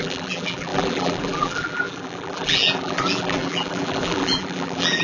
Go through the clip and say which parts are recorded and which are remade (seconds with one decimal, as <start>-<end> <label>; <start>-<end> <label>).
0.0-5.0 remade